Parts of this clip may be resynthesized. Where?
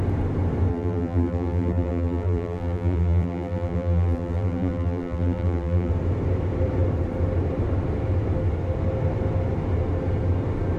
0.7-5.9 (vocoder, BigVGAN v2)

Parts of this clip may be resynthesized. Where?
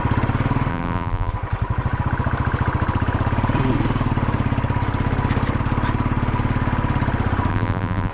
0.7-1.3 (vocoder, BigVGAN v2); 7.5-8.1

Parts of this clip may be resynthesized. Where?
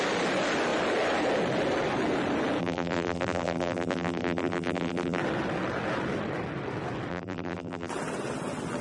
2.6-5.2 (vocoder, BigVGAN v2); 7.1-7.9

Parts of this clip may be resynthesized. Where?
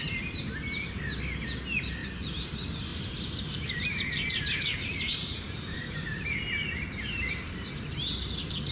2.0-2.5 (vocoder, BigVGAN v2); 2.9-7.7